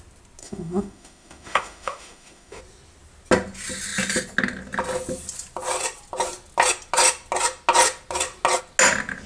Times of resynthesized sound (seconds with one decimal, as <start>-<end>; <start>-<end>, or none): 0.4-2.6

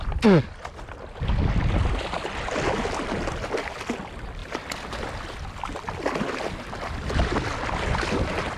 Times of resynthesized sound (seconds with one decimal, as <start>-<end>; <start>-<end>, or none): none

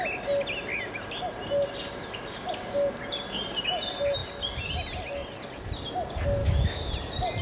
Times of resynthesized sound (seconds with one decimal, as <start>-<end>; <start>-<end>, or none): 6.4-6.9

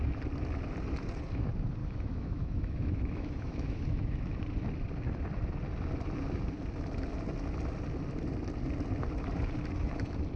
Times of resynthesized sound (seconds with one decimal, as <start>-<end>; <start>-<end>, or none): 1.8-4.4

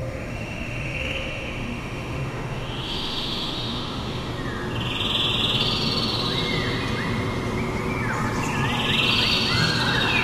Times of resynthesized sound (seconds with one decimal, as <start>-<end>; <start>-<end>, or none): 0.0-4.3

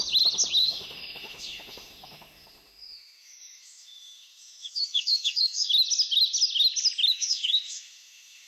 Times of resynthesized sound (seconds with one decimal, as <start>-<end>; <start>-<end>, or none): 0.6-5.7; 7.1-8.5

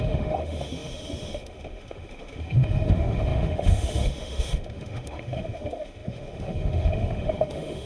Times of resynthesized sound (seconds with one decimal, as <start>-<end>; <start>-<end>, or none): 0.0-7.9

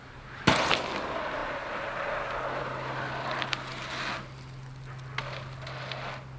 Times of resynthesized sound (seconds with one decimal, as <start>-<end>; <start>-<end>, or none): none